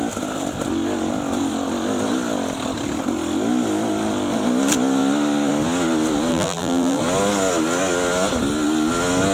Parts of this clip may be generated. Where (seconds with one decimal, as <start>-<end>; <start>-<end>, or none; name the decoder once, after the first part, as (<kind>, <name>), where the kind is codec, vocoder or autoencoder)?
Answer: 6.3-7.0 (vocoder, BigVGAN v2)